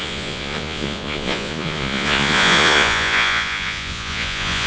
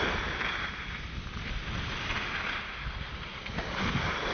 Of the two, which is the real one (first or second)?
second